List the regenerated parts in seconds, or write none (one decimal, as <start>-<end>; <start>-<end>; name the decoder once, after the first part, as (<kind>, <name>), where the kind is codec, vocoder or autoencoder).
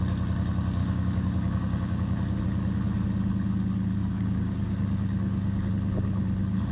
0.8-2.4 (codec, DAC); 4.0-5.7